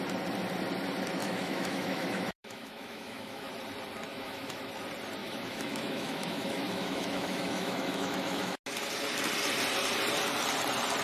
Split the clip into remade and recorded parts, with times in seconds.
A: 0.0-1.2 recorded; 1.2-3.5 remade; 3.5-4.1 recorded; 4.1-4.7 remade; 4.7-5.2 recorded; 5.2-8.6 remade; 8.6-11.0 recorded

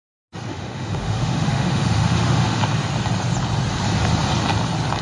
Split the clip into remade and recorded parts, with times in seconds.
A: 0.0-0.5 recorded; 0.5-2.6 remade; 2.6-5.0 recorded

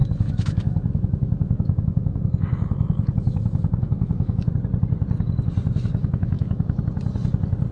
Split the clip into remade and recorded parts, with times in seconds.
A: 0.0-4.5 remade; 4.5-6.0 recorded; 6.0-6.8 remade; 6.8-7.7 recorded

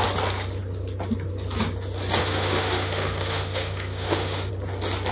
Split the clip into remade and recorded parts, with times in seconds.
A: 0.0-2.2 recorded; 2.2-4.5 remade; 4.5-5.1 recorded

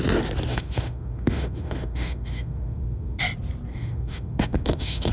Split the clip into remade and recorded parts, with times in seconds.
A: 0.0-0.5 recorded; 0.5-3.2 remade; 3.2-3.7 recorded; 3.7-5.1 remade

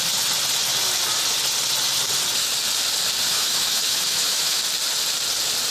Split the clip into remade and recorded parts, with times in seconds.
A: 0.0-3.3 recorded; 3.3-4.6 remade; 4.6-5.7 recorded

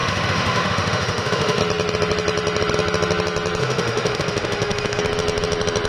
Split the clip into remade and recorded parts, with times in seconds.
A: 0.0-1.6 remade; 1.6-3.6 recorded; 3.6-5.0 remade; 5.0-5.9 recorded

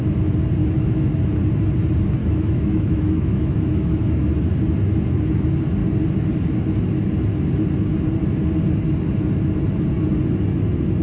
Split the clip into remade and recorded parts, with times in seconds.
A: 0.0-0.6 recorded; 0.6-1.2 remade; 1.2-2.2 recorded; 2.2-4.3 remade; 4.3-11.0 recorded